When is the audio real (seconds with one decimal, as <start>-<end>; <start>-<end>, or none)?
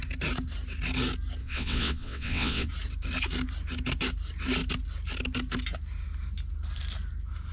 0.0-1.4; 2.7-7.5